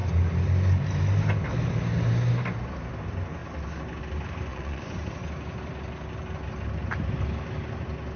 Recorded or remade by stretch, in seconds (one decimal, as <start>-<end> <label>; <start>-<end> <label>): 0.0-4.5 recorded; 4.5-5.0 remade; 5.0-8.2 recorded